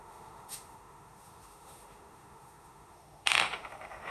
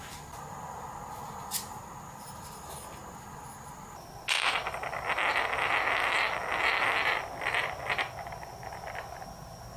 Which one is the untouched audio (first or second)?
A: second